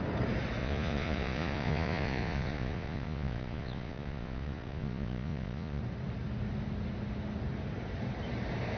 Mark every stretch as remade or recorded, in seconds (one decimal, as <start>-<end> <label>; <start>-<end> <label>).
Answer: 0.0-0.6 recorded; 0.6-5.8 remade; 5.8-8.8 recorded